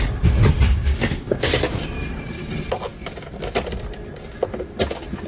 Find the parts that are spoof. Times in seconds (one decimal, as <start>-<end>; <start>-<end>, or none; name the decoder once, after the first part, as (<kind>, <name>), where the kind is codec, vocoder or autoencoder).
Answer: 0.7-1.5 (codec, DAC)